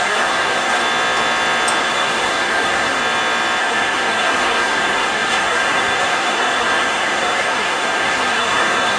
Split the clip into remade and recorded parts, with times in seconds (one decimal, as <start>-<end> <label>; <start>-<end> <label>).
0.0-0.8 remade; 0.8-1.8 recorded; 1.8-3.0 remade; 3.0-3.6 recorded; 3.6-9.0 remade